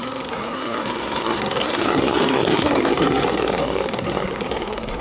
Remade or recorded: remade